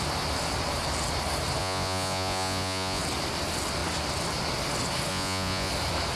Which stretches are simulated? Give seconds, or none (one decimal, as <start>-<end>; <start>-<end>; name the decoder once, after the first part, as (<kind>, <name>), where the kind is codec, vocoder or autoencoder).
1.6-3.0 (vocoder, Vocos); 5.1-5.7